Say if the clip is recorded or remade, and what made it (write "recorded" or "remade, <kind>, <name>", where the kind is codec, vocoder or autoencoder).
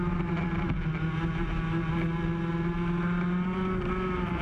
recorded